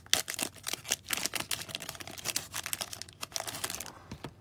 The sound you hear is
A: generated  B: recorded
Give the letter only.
B